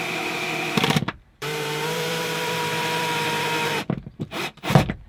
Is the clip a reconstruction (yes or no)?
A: yes